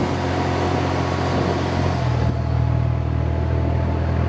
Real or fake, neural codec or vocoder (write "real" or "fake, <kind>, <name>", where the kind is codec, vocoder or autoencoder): real